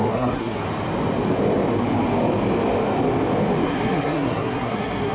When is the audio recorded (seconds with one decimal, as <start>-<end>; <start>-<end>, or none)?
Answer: 0.6-3.6